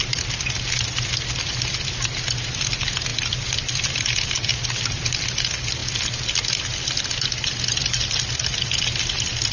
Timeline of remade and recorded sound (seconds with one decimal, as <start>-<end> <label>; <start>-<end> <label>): 0.0-9.5 recorded